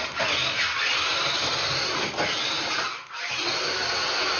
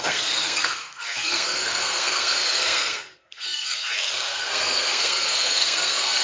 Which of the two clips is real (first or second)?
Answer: first